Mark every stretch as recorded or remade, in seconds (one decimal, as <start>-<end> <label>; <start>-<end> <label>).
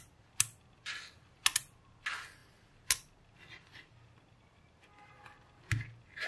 0.0-6.3 recorded